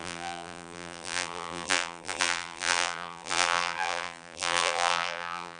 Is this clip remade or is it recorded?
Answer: remade